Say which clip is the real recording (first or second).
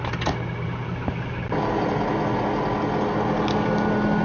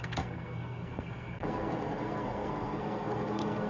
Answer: first